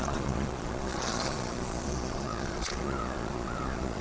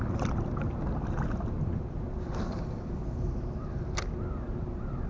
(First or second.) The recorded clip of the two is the second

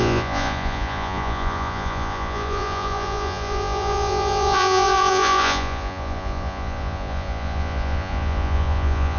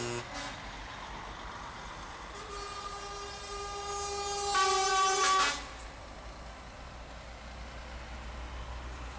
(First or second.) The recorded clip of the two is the second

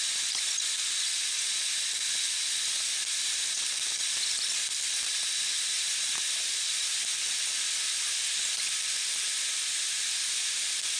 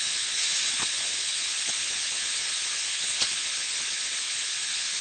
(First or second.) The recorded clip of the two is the first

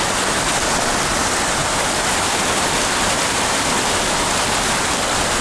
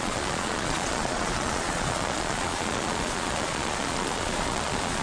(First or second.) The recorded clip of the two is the first